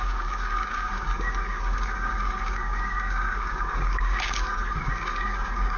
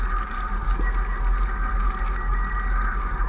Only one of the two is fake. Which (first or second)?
first